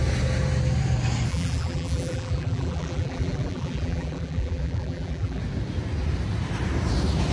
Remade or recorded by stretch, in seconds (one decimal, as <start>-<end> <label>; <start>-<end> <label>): 0.0-1.3 recorded; 1.3-5.4 remade; 5.4-7.3 recorded